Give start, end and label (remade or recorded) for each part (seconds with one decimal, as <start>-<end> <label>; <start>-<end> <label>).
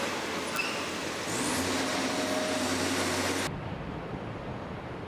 0.0-5.1 recorded